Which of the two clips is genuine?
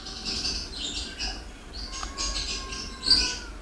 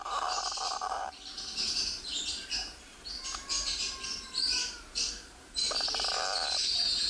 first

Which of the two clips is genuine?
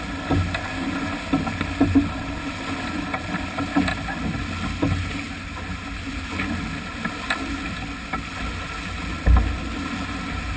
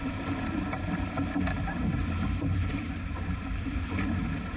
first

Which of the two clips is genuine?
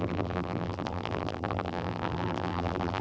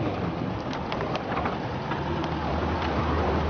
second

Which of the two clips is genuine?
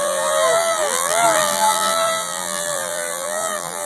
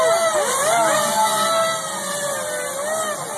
second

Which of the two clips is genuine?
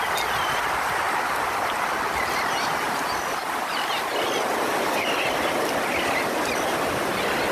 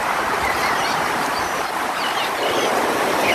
first